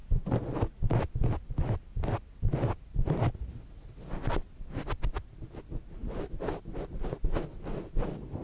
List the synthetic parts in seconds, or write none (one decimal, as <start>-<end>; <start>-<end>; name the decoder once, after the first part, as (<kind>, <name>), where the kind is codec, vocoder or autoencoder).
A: none